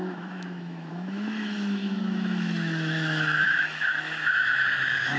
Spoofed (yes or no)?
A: yes